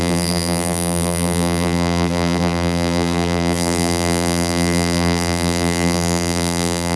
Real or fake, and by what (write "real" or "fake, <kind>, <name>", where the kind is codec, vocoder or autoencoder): fake, vocoder, BigVGAN v2